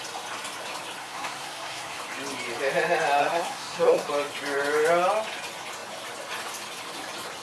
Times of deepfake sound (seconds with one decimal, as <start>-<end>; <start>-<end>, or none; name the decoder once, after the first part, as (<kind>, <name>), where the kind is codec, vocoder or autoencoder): 1.0-2.0 (codec, SNAC); 3.2-4.1